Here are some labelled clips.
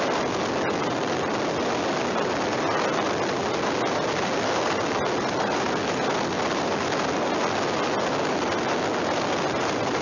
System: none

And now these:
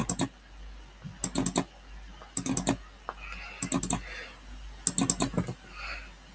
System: none